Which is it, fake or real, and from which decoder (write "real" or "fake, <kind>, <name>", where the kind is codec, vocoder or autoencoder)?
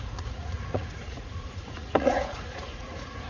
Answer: fake, vocoder, Vocos